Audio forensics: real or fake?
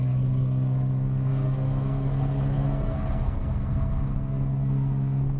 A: fake